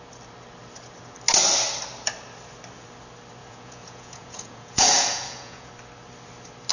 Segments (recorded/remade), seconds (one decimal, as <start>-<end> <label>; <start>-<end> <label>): 0.0-3.4 recorded; 3.4-5.7 remade; 5.7-6.7 recorded